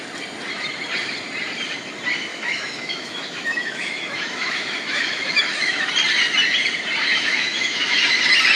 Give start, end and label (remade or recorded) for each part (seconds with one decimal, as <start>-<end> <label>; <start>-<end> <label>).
0.0-2.3 recorded; 2.3-5.9 remade; 5.9-7.1 recorded; 7.1-8.0 remade; 8.0-8.6 recorded